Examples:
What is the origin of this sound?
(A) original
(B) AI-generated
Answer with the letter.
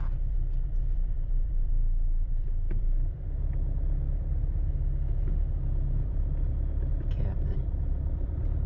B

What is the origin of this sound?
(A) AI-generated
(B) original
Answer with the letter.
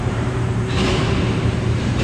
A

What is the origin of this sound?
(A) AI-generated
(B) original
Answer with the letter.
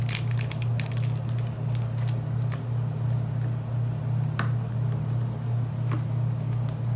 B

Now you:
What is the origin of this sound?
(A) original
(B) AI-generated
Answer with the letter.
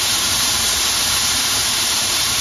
B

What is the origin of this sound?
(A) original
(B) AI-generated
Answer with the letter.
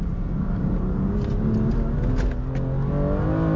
A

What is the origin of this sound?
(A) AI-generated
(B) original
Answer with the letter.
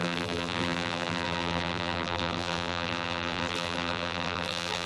A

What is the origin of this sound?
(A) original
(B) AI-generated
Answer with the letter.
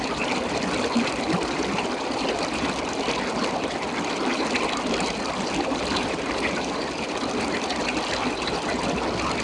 A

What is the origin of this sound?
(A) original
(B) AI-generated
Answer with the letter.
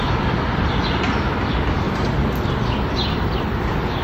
A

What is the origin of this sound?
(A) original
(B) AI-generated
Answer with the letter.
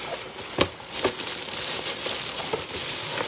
A